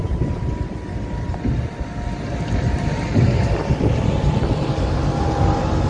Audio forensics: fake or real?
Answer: real